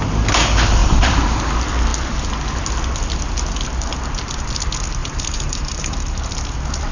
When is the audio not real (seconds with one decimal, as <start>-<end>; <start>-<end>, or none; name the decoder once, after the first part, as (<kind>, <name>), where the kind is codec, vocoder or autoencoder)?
0.8-1.5 (vocoder, BigVGAN v2); 5.0-6.2